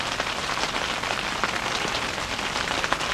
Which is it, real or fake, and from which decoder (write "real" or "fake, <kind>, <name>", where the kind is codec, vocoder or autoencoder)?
real